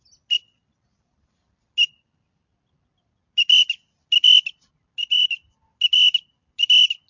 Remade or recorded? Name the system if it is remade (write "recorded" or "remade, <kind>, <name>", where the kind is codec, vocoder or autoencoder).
recorded